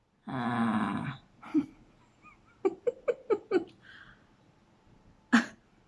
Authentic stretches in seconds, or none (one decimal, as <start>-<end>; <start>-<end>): 0.0-5.9